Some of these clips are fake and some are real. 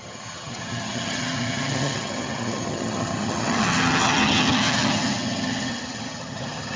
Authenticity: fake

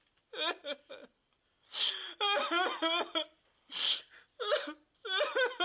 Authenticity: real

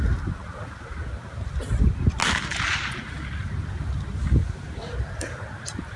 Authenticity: real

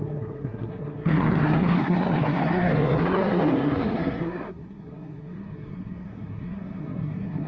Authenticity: fake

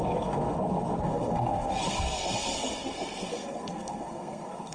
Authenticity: fake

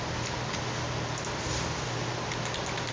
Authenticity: real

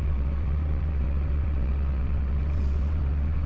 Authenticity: fake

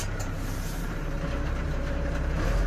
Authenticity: fake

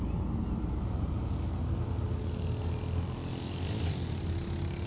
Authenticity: real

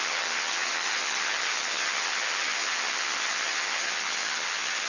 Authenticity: fake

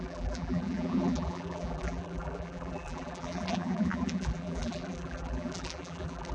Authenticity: fake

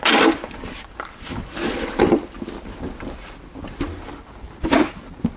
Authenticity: real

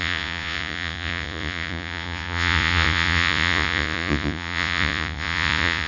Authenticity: fake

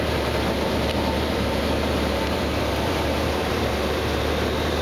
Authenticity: fake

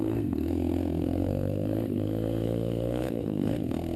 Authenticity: fake